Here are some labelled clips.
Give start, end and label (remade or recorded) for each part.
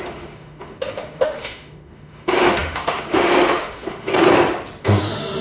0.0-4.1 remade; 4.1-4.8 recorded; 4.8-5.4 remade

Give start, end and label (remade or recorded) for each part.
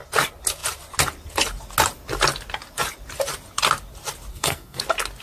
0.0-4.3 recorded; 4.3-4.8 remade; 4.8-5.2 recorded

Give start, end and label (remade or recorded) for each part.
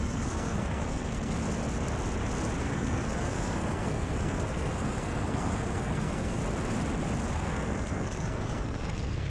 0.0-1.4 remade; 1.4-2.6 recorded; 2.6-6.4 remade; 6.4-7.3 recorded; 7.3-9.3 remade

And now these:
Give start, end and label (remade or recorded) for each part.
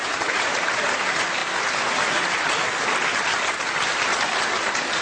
0.0-1.4 remade; 1.4-4.4 recorded; 4.4-5.0 remade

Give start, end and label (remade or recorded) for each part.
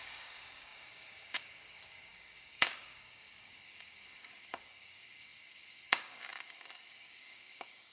0.0-7.9 remade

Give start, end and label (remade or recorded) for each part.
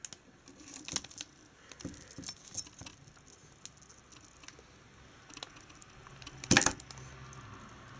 0.0-8.0 recorded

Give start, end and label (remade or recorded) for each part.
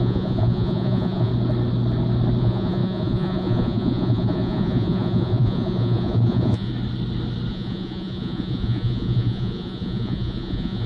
0.0-1.3 remade; 1.3-2.4 recorded; 2.4-6.7 remade; 6.7-7.5 recorded; 7.5-10.9 remade